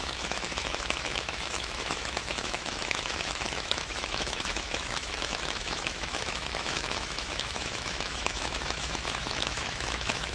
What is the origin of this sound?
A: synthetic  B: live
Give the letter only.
A